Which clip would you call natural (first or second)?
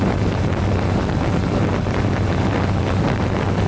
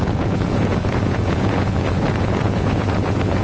first